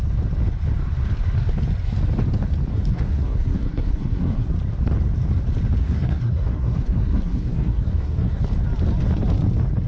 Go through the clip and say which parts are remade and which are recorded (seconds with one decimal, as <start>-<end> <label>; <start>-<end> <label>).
0.0-2.7 recorded; 2.7-4.5 remade; 4.5-5.8 recorded; 5.8-8.4 remade; 8.4-9.9 recorded